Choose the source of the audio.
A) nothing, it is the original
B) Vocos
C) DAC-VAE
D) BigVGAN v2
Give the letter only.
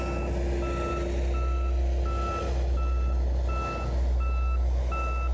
A